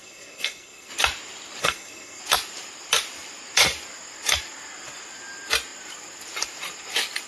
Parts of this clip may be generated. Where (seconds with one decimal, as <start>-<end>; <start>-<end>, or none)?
0.0-0.9; 1.6-2.2